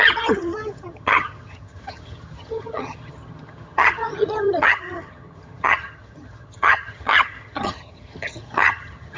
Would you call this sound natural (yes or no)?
no